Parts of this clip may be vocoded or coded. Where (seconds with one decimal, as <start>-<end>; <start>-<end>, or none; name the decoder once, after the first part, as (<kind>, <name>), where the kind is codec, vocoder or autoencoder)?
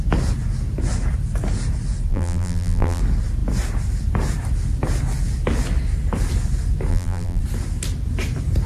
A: 2.1-3.0 (vocoder, BigVGAN v2); 6.9-7.4